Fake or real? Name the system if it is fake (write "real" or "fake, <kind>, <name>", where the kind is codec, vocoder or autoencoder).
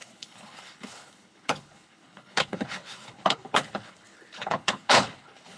fake, codec, HILCodec